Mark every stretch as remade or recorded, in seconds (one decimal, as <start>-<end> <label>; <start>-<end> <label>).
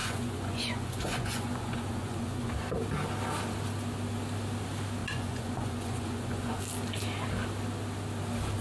0.0-2.5 remade; 2.5-5.0 recorded; 5.0-6.6 remade; 6.6-8.6 recorded